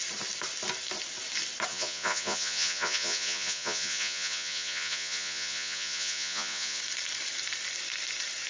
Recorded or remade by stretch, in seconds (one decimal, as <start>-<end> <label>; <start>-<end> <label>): 0.0-1.7 recorded; 1.7-6.8 remade; 6.8-8.5 recorded